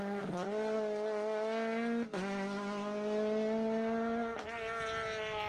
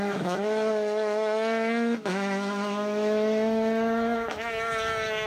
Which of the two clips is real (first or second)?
first